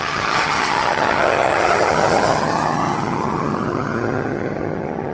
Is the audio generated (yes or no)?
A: yes